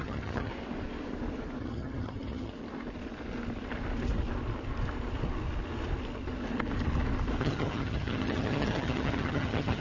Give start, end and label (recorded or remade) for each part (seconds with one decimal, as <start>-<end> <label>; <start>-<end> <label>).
0.0-0.5 remade; 0.5-1.6 recorded; 1.6-2.5 remade; 2.5-7.4 recorded; 7.4-9.8 remade